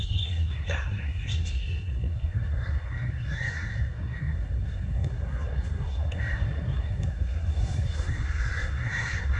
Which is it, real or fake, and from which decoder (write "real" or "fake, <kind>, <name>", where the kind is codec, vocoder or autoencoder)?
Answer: fake, codec, SNAC